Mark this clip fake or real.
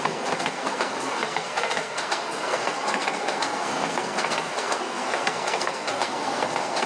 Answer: fake